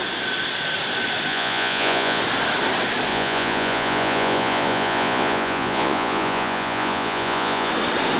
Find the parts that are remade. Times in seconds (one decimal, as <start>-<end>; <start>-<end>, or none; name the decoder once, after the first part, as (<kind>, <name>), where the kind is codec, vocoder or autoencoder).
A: 1.3-2.2 (vocoder, Vocos); 3.1-7.7